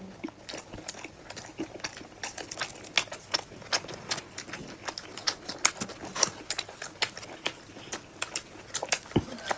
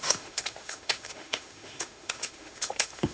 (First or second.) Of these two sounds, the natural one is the first